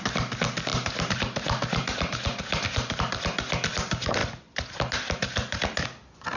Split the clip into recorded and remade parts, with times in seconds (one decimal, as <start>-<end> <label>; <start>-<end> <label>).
0.0-0.7 recorded; 0.7-3.0 remade; 3.0-6.4 recorded